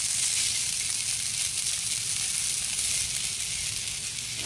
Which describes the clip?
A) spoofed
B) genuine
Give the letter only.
B